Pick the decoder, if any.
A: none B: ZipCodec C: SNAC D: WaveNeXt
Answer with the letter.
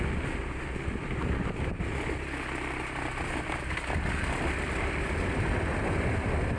A